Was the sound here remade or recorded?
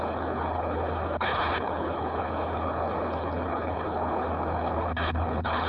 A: remade